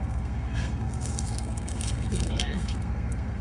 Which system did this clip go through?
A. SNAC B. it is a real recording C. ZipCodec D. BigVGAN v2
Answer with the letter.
A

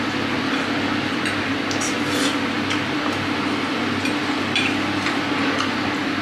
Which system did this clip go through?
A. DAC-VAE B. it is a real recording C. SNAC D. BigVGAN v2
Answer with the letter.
B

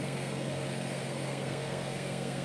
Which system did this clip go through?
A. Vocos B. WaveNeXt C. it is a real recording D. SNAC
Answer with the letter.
D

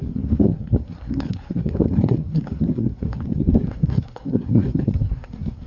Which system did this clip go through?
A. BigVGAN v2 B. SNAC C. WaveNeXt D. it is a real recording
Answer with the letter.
B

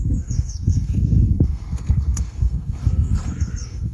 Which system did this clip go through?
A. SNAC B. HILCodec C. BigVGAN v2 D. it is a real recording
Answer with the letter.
A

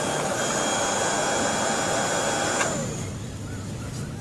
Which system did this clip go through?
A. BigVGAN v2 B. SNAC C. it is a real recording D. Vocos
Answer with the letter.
C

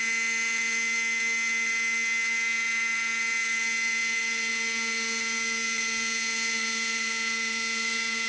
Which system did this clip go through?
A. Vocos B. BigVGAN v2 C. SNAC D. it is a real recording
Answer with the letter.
D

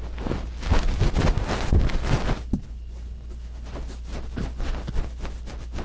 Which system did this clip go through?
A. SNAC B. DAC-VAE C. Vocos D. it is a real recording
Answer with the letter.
D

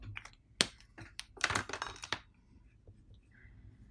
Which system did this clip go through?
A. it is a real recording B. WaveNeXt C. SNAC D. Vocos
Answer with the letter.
A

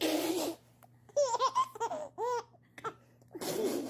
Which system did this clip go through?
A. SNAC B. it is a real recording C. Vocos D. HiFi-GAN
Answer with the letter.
B